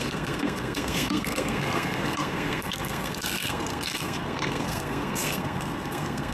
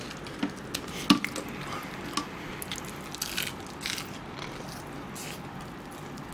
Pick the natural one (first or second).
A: second